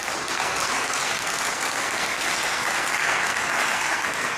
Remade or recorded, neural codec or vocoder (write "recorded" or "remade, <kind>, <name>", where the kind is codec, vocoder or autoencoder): remade, codec, SNAC